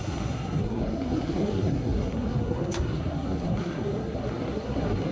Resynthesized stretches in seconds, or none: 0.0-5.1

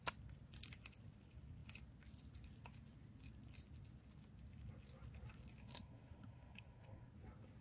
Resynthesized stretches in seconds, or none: 5.6-7.1

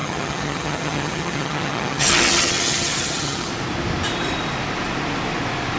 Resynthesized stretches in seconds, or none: 0.0-3.5

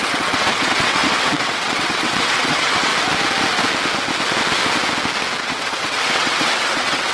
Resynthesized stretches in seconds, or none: 0.0-2.9; 5.4-7.1

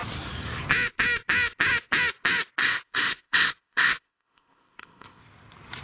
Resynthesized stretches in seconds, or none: 2.6-5.2

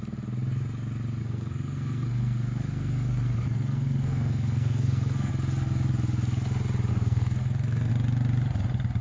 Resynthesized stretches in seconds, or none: 1.2-5.3; 6.9-7.9

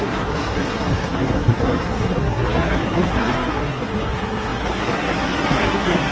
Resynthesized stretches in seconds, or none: 0.0-6.1